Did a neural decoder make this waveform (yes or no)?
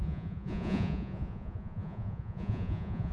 yes